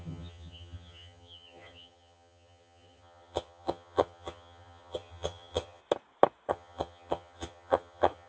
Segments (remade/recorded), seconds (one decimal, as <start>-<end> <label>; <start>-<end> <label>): 0.0-5.8 remade; 5.8-6.5 recorded; 6.5-8.3 remade